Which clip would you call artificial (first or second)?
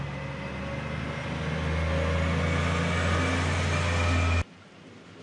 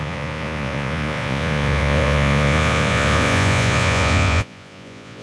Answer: second